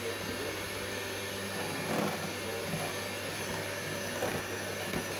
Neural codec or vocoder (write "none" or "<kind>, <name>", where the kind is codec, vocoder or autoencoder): none